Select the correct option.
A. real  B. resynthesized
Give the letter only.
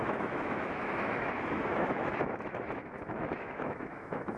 B